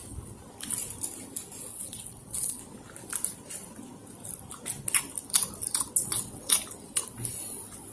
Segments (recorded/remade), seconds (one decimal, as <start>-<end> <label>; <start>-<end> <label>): 0.0-1.7 recorded; 1.7-2.6 remade; 2.6-6.0 recorded; 6.0-6.5 remade; 6.5-7.9 recorded